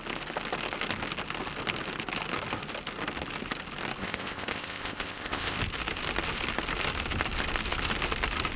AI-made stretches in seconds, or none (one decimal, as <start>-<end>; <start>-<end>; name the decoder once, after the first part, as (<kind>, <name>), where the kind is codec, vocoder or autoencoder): 4.0-5.6 (codec, ZipCodec)